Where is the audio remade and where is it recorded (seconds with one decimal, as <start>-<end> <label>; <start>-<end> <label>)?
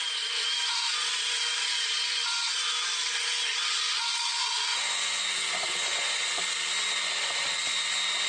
0.0-4.7 recorded; 4.7-6.3 remade; 6.3-8.3 recorded